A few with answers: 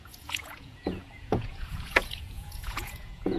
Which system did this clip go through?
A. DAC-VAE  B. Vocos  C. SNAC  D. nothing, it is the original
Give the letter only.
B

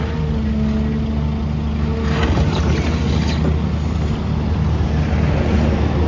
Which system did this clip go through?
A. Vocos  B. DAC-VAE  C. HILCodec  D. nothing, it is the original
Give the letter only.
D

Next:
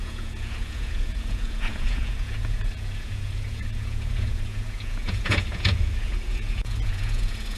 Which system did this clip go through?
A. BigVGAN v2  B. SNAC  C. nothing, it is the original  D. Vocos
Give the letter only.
D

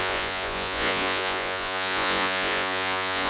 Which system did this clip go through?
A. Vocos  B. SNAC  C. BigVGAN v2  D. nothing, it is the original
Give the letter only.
A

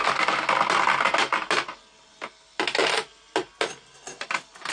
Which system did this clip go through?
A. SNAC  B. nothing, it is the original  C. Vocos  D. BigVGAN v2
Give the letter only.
B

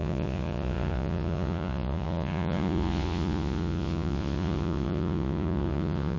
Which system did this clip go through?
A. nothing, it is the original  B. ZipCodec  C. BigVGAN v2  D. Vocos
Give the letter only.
D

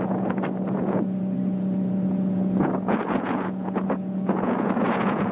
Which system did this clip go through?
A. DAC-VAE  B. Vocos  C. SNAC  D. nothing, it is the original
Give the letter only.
B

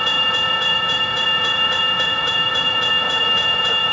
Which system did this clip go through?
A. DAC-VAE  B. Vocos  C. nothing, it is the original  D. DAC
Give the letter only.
B